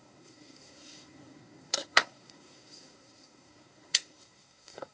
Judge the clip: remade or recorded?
remade